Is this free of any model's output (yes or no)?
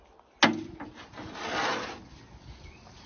yes